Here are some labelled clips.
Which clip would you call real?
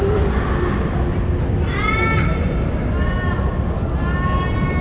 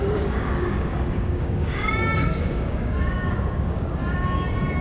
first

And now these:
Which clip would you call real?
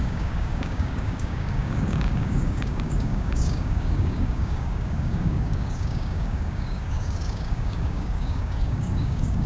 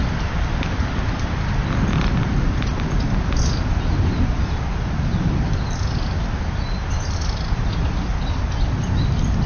second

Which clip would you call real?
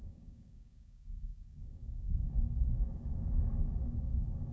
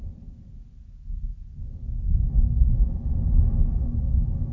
second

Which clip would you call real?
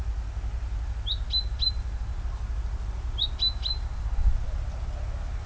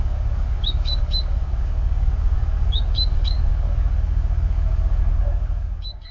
first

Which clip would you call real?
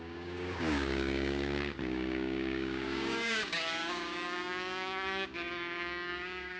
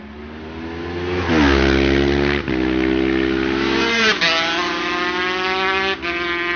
second